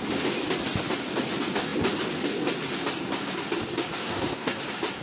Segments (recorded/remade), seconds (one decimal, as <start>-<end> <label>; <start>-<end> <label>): 0.0-4.0 recorded; 4.0-4.6 remade; 4.6-5.0 recorded